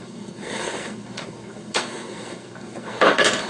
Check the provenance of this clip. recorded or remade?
remade